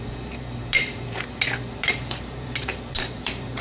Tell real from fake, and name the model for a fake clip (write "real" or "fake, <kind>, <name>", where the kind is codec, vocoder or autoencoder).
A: fake, vocoder, BigVGAN v2